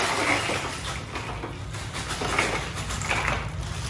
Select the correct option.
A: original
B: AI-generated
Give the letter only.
A